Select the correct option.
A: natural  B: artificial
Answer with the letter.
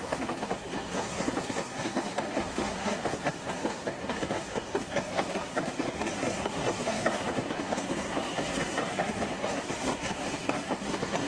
B